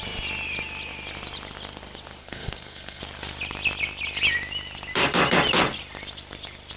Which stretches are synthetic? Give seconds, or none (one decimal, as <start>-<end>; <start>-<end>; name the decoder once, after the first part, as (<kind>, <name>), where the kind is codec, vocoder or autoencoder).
2.2-3.0 (codec, SNAC)